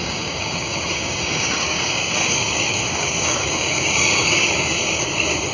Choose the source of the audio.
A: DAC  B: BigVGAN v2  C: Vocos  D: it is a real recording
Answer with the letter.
A